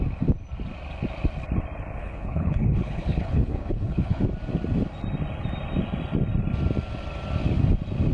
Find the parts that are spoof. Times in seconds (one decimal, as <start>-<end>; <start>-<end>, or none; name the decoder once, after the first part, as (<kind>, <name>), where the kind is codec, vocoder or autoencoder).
2.0-4.2 (codec, HILCodec)